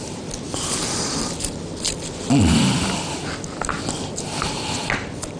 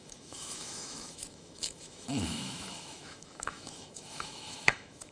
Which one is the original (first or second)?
first